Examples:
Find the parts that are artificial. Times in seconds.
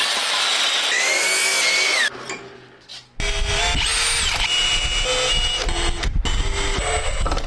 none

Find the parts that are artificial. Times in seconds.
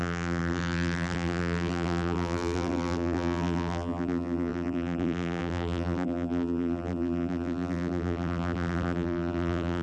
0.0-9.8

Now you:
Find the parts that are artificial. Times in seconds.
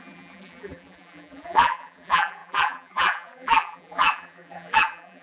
0.0-5.2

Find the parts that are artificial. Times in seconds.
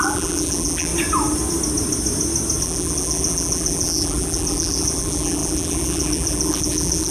0.0-0.9; 2.6-7.1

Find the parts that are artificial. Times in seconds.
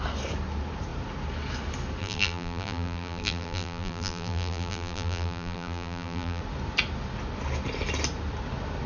2.0-6.4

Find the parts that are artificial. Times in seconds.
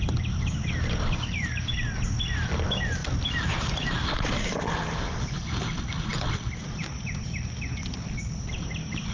none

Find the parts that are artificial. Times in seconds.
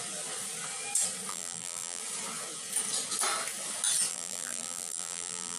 1.3-2.0; 4.1-5.6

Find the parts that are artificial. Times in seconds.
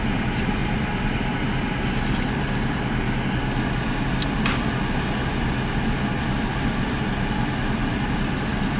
0.0-0.6; 5.9-8.8